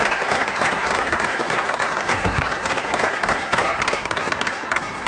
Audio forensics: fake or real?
fake